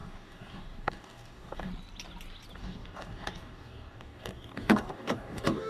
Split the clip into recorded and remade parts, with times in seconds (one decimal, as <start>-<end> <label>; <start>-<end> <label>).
0.0-1.7 remade; 1.7-2.6 recorded; 2.6-5.7 remade